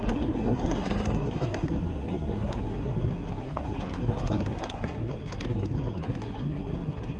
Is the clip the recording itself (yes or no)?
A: no